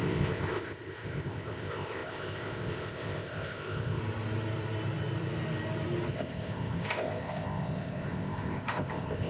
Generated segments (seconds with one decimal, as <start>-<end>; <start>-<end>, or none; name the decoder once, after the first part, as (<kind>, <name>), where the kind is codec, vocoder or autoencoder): 0.0-4.0 (codec, ZipCodec); 6.1-9.3